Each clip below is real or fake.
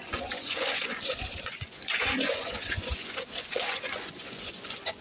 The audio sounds fake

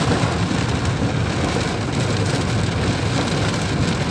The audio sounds real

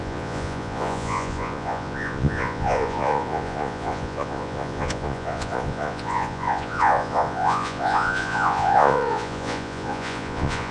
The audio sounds fake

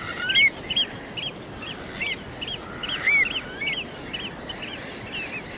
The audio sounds real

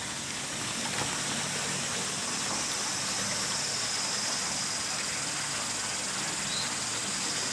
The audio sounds real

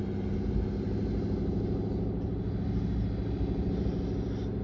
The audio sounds real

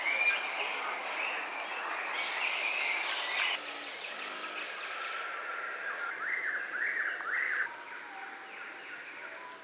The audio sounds real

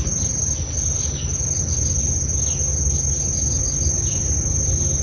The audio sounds real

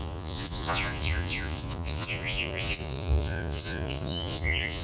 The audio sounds fake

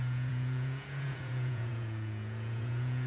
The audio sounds fake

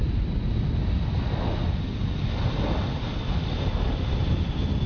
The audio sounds real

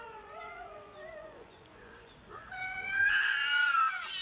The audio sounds fake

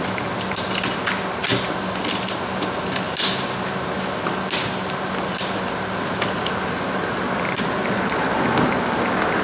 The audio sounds real